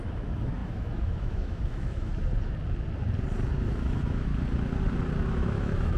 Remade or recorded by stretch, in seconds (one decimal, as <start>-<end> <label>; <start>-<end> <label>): 0.0-2.1 remade; 2.1-3.7 recorded; 3.7-4.3 remade; 4.3-5.3 recorded; 5.3-6.0 remade